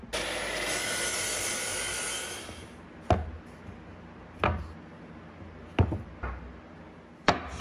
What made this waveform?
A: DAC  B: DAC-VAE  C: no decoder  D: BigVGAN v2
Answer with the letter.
C